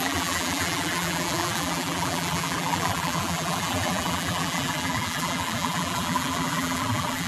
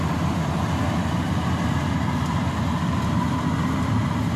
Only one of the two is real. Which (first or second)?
second